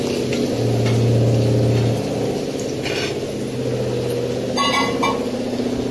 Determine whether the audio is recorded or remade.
recorded